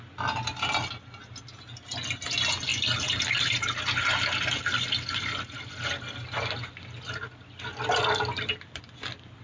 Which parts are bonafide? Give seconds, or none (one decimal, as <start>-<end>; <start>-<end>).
0.0-9.4